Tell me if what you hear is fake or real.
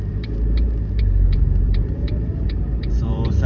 fake